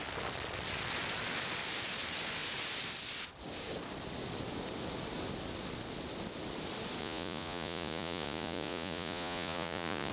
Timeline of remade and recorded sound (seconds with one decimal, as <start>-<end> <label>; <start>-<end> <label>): 0.0-7.0 recorded; 7.0-10.1 remade